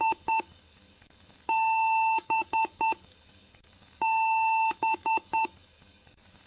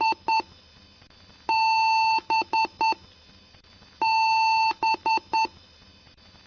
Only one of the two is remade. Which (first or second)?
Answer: first